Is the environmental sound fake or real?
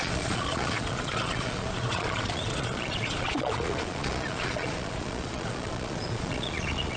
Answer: fake